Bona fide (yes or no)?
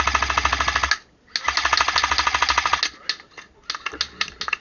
yes